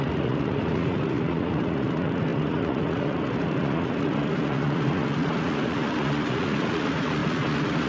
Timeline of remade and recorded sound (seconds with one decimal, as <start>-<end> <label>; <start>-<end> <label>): 0.0-7.9 remade